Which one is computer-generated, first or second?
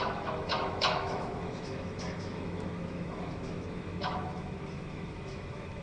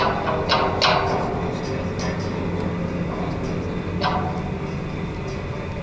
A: first